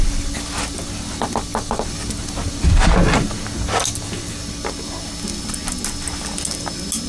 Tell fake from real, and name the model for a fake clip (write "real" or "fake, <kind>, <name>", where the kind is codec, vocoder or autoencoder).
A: real